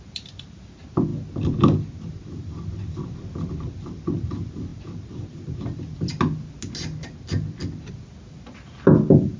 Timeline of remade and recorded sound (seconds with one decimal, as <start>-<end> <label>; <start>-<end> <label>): 0.0-9.4 recorded